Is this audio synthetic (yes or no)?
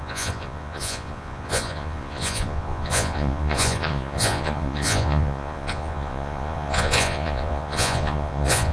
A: yes